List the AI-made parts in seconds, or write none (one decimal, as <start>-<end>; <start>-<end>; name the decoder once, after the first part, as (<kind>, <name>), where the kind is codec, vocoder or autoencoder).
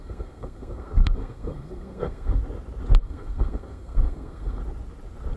0.0-2.4 (codec, SNAC); 3.0-4.6